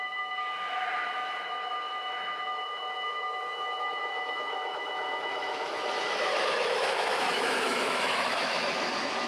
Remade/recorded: remade